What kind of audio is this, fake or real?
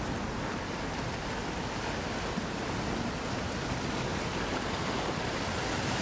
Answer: real